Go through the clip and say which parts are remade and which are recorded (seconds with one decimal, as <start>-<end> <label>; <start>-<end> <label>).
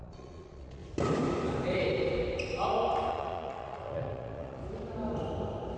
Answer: 0.0-0.8 remade; 0.8-3.1 recorded; 3.1-4.6 remade; 4.6-5.8 recorded